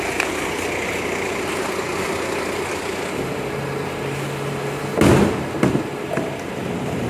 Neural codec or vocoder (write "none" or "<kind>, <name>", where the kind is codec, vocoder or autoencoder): none